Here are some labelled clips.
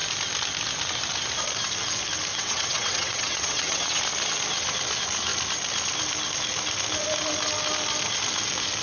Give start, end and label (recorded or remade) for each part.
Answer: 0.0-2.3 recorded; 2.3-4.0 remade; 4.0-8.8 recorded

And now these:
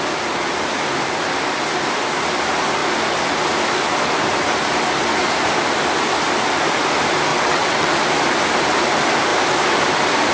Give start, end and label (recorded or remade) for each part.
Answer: 0.0-7.3 recorded; 7.3-7.9 remade; 7.9-10.3 recorded

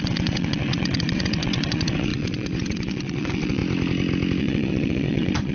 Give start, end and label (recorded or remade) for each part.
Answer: 0.0-3.6 remade; 3.6-4.4 recorded; 4.4-5.5 remade